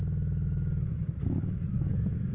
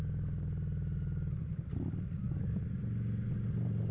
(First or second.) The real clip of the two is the second